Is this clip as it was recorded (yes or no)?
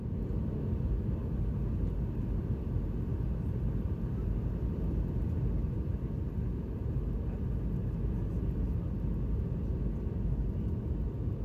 yes